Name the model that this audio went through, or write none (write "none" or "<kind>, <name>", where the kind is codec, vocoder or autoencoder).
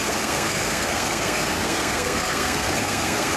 codec, SNAC